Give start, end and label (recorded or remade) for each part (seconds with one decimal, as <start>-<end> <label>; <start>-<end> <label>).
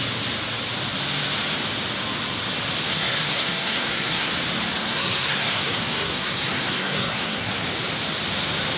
0.0-2.9 recorded; 2.9-4.3 remade; 4.3-4.8 recorded; 4.8-7.5 remade; 7.5-8.8 recorded